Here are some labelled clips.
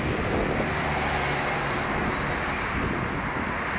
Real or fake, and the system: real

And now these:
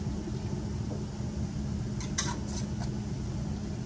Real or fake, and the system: real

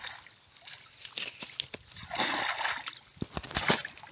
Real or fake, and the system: real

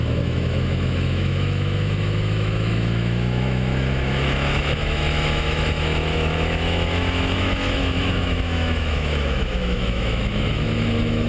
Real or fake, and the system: fake, autoencoder, DAC-VAE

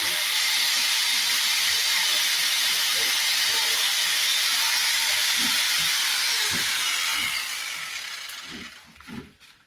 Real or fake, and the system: fake, vocoder, BigVGAN v2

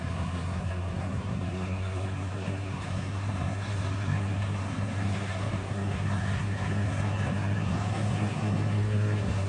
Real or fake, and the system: fake, codec, SNAC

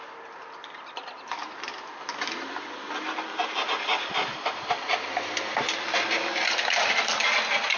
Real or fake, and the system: real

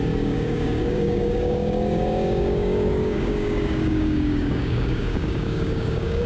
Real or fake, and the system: fake, codec, DAC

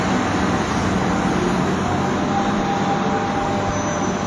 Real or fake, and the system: real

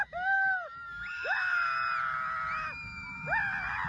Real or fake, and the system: real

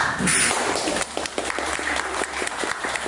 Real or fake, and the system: fake, vocoder, BigVGAN v2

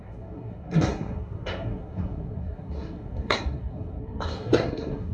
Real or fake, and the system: fake, codec, SNAC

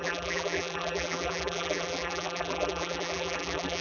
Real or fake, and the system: fake, vocoder, BigVGAN v2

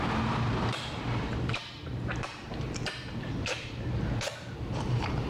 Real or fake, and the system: fake, vocoder, BigVGAN v2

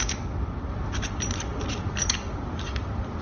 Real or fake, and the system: real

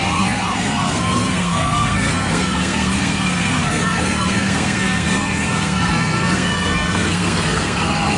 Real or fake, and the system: fake, codec, SNAC